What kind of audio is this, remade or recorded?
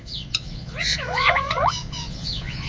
remade